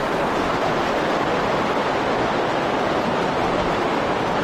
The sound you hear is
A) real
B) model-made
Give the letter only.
A